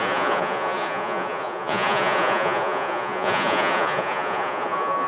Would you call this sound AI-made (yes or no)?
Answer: yes